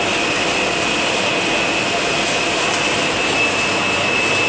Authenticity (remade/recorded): recorded